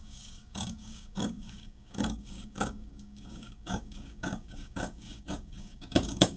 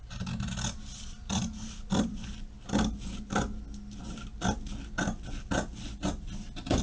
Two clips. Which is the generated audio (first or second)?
first